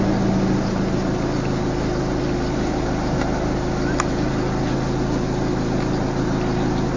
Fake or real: real